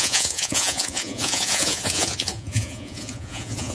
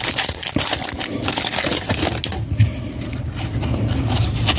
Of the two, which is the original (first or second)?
second